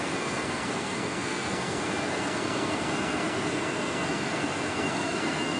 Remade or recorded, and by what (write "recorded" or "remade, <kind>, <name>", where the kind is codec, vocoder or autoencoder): remade, codec, SNAC